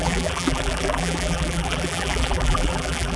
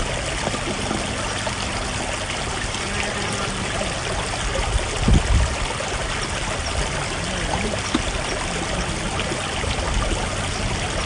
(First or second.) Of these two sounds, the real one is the second